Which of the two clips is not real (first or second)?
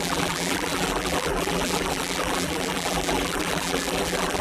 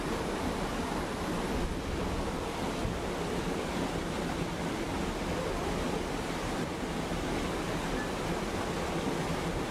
first